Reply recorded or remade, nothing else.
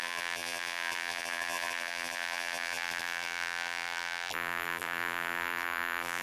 remade